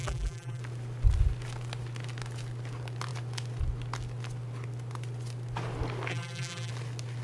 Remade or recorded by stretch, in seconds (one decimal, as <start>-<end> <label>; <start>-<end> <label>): 0.0-0.6 remade; 0.6-6.1 recorded; 6.1-6.7 remade; 6.7-7.2 recorded